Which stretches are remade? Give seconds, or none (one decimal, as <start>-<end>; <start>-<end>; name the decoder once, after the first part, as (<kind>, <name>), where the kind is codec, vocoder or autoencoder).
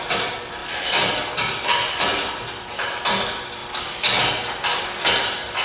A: 0.6-1.3 (vocoder, BigVGAN v2); 3.6-4.8